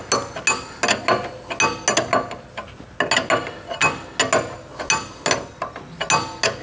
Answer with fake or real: real